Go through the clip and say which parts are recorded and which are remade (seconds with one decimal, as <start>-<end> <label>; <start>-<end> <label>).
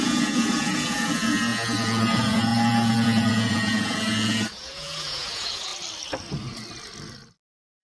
0.0-5.7 remade; 5.7-7.8 recorded